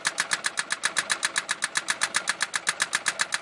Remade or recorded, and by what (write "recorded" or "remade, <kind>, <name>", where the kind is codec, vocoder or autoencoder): recorded